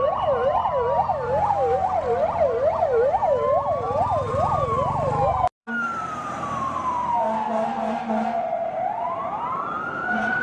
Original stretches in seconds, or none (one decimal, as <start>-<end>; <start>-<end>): 0.0-5.6